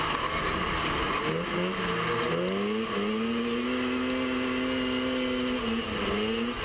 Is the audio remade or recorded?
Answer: recorded